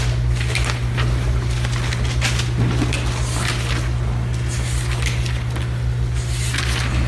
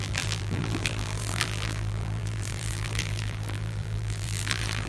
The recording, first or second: first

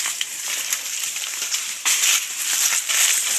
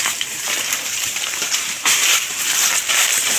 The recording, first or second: first